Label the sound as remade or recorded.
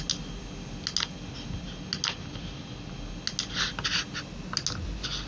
recorded